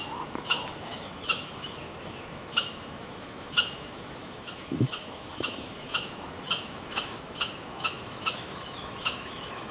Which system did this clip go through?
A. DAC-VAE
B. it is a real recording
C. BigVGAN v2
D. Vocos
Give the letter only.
A